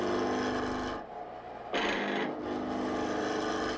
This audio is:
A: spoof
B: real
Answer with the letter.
B